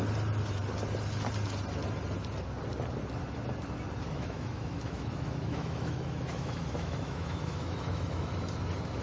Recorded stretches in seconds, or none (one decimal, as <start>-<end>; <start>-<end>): 0.0-4.1; 8.3-9.0